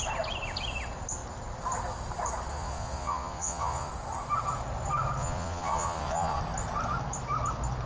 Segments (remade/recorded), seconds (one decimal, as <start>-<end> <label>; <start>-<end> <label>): 0.0-2.5 recorded; 2.5-3.9 remade; 3.9-5.2 recorded; 5.2-6.4 remade; 6.4-7.9 recorded